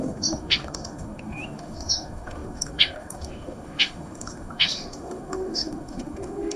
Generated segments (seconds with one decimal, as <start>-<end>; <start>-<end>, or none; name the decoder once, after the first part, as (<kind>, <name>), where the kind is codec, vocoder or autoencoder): 0.0-6.6 (autoencoder, DAC-VAE)